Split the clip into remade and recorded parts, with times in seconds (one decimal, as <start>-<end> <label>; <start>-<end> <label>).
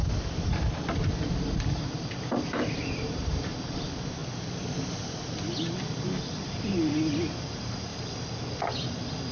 0.0-1.0 recorded; 1.0-4.2 remade; 4.2-6.0 recorded; 6.0-7.9 remade; 7.9-9.3 recorded